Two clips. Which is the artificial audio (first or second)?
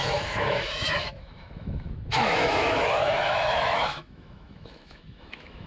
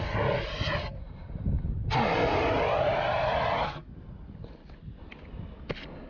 first